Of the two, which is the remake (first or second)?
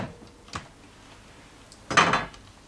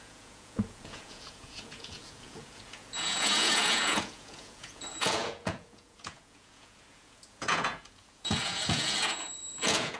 second